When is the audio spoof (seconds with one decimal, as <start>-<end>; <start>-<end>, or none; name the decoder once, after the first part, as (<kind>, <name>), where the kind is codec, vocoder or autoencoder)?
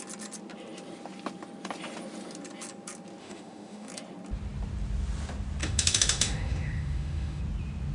3.2-3.9 (autoencoder, DAC-VAE); 5.6-7.4